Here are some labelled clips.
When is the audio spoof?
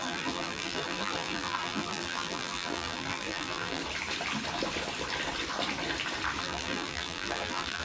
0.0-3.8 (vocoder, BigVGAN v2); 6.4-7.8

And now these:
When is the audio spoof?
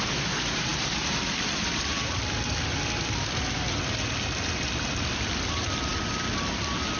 none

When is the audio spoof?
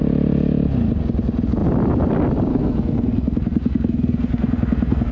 2.5-5.1 (codec, SNAC)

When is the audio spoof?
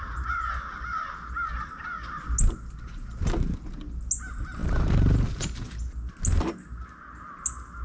none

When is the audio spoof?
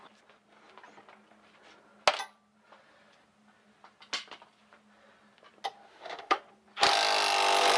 5.9-6.4 (autoencoder, DAC-VAE)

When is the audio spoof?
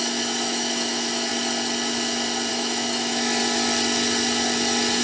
0.0-1.3 (autoencoder, DAC-VAE); 2.5-3.4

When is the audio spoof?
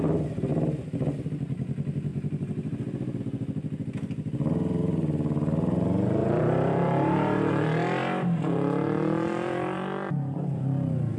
2.1-3.2 (vocoder, BigVGAN v2); 6.2-7.5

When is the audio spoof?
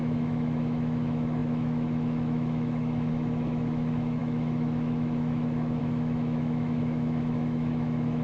0.0-8.2 (autoencoder, DAC-VAE)